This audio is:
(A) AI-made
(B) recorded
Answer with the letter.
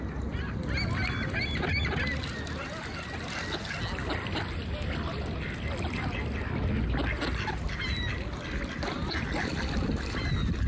B